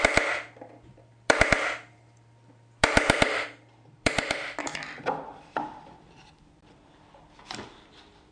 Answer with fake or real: fake